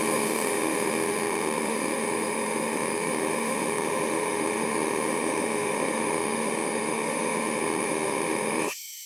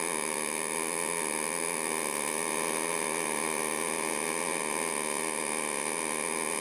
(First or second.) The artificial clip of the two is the first